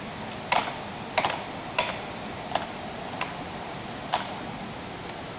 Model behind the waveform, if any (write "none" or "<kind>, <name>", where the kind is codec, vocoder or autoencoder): none